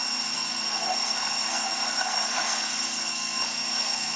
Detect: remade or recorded remade